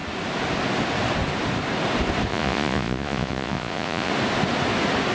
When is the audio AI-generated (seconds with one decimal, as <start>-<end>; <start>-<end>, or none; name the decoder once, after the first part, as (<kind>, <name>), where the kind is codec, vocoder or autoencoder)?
2.3-4.1 (vocoder, Vocos)

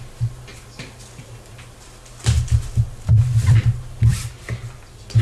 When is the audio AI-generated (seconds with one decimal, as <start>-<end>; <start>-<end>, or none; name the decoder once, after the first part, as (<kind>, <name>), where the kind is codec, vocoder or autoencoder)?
none